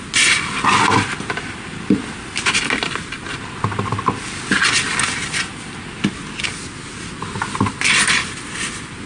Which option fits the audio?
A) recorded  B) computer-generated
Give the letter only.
A